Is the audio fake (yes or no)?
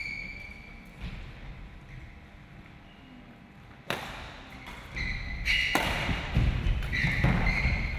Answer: no